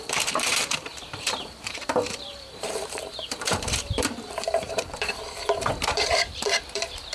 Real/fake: fake